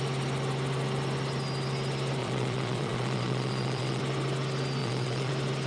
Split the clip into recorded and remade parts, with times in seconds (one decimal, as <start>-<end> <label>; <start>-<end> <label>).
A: 0.0-2.2 recorded; 2.2-4.0 remade; 4.0-4.8 recorded; 4.8-5.3 remade; 5.3-5.7 recorded